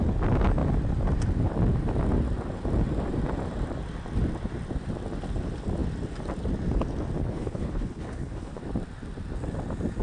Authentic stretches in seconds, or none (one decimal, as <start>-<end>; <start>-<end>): 0.0-7.2; 8.6-10.0